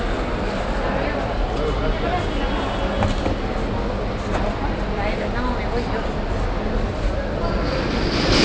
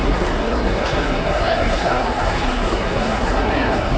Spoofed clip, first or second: second